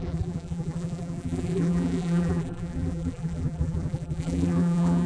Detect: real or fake fake